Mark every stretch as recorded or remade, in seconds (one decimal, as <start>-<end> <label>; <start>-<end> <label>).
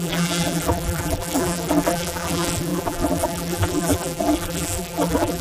0.0-5.4 remade